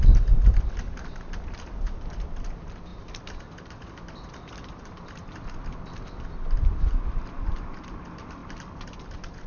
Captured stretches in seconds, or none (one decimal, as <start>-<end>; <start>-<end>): 0.0-9.5

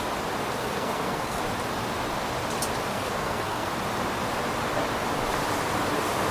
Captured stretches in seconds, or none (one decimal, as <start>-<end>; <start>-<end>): 0.0-0.6; 1.4-2.9; 3.7-6.3

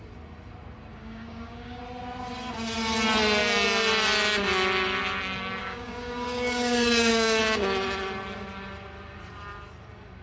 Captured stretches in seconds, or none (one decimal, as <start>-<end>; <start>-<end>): 0.0-0.9; 1.8-5.6; 7.4-10.2

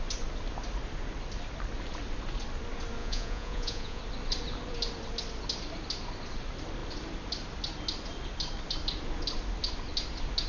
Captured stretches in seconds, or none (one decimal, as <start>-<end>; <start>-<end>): 0.0-3.0; 4.0-10.5

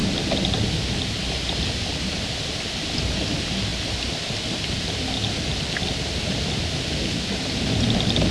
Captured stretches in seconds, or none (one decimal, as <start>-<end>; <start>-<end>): 0.0-8.3

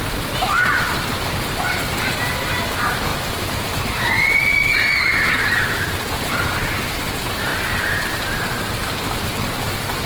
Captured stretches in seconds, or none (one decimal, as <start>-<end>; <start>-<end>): 3.1-6.1; 7.5-9.7

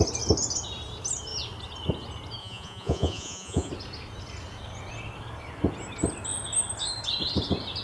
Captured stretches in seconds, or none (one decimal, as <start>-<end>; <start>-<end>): 0.0-2.4; 3.7-7.8

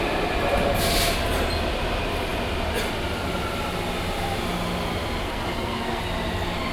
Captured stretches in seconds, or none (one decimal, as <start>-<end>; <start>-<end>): 0.0-5.2; 6.0-6.7